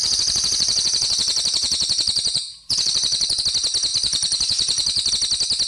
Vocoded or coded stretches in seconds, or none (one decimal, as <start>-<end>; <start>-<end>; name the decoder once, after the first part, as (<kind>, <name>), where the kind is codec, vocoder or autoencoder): 0.0-3.4 (vocoder, Vocos); 3.9-5.1